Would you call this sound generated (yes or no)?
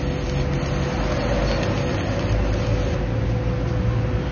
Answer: no